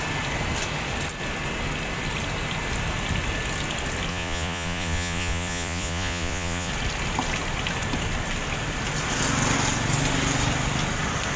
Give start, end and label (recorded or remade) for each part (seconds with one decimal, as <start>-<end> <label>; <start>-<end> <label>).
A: 0.0-4.1 recorded; 4.1-6.7 remade; 6.7-11.4 recorded